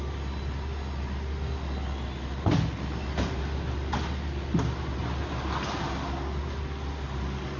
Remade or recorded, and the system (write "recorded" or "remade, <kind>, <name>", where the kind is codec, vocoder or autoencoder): recorded